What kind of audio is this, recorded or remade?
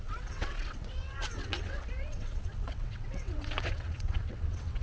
remade